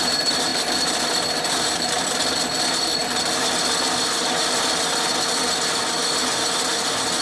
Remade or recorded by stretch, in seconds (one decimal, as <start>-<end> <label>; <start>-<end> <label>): 0.0-7.2 recorded